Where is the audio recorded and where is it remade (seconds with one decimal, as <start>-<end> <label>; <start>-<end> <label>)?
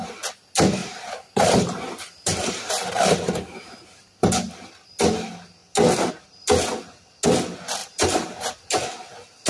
0.0-0.8 recorded; 0.8-4.7 remade; 4.7-7.8 recorded; 7.8-8.7 remade; 8.7-9.5 recorded